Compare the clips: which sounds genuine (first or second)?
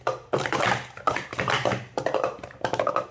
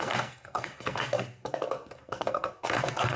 first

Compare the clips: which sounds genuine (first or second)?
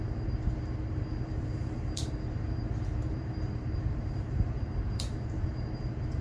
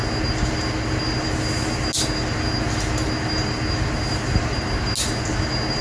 second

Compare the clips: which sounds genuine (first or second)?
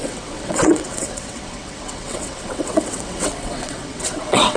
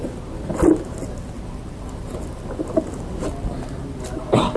second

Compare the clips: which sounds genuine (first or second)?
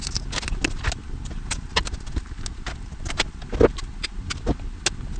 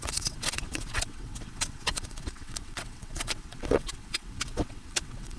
first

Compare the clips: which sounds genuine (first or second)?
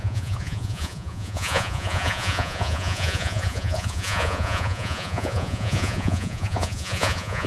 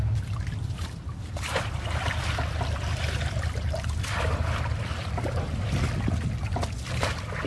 second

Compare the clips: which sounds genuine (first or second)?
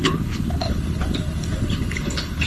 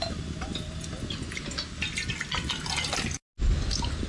second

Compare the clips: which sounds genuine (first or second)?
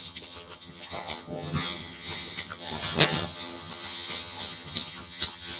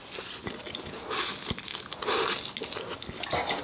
second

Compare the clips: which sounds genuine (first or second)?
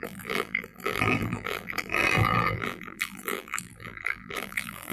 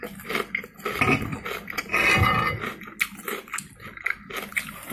second